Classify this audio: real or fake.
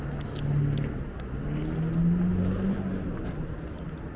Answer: real